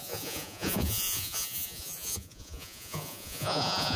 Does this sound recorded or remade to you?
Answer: remade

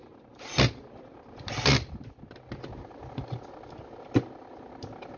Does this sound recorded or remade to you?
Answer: recorded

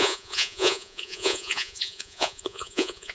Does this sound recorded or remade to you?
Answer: remade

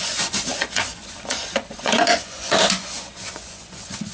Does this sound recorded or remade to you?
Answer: remade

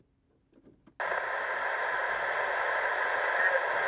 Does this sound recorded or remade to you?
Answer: recorded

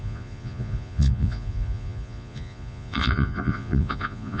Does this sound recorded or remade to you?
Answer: remade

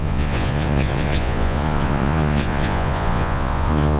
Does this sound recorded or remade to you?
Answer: remade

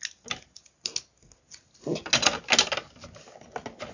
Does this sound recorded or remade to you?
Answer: recorded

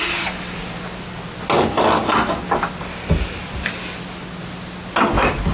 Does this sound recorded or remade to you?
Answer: recorded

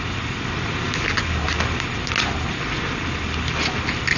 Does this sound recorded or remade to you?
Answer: recorded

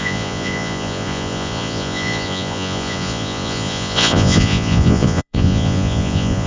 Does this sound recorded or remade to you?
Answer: remade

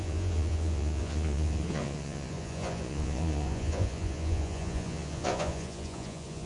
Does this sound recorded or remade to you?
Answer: remade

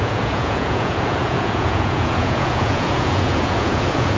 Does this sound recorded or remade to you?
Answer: remade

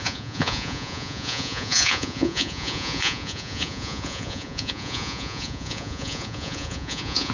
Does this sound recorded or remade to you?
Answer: remade